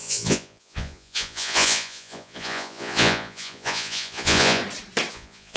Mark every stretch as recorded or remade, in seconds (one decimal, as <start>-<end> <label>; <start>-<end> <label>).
0.0-4.6 remade; 4.6-5.1 recorded; 5.1-5.6 remade